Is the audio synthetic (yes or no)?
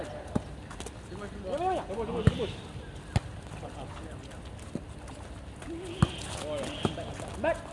no